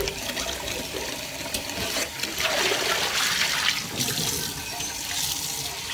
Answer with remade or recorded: recorded